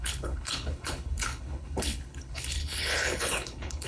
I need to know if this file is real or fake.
fake